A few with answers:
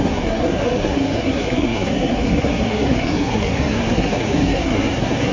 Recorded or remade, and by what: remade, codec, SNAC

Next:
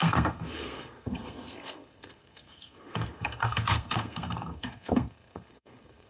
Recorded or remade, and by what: remade, codec, SNAC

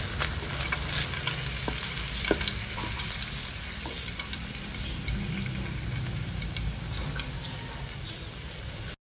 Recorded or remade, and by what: recorded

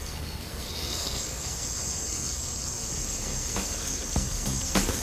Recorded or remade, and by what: remade, codec, SNAC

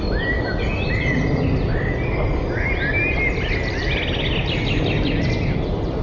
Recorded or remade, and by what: recorded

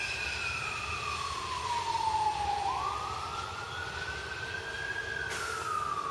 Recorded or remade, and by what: recorded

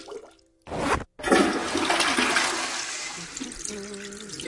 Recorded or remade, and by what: recorded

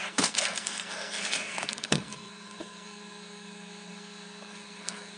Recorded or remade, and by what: remade, codec, SNAC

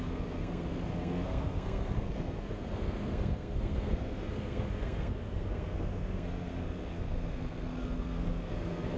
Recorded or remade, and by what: remade, codec, SNAC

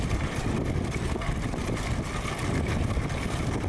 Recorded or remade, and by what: recorded